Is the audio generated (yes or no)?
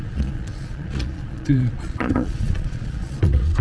yes